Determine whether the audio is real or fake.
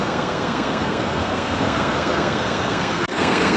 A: fake